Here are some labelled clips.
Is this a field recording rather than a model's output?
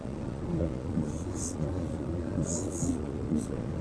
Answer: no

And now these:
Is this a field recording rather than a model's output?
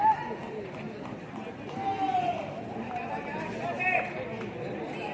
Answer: yes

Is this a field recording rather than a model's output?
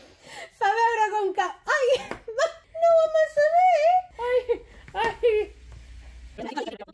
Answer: yes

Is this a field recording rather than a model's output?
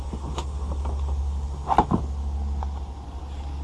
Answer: yes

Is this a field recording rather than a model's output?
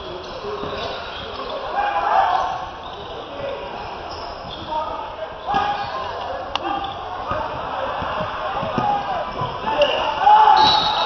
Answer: yes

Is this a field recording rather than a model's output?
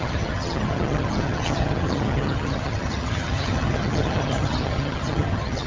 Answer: no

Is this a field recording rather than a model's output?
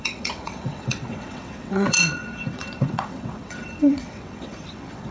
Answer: no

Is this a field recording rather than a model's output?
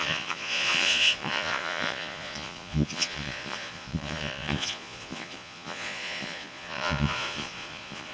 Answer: no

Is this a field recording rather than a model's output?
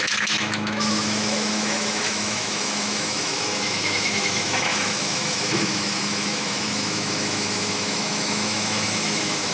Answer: no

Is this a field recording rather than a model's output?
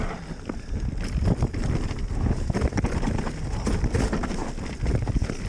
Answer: yes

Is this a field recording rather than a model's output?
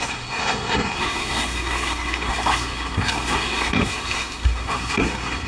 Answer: no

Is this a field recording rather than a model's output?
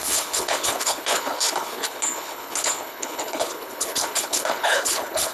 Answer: no